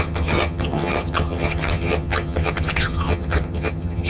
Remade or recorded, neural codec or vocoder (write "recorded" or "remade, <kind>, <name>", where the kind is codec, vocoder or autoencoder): remade, vocoder, HiFi-GAN